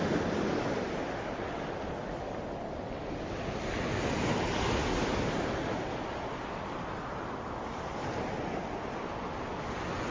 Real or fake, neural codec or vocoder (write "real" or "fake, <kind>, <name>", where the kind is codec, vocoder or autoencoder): real